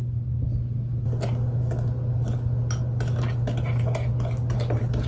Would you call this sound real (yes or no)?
yes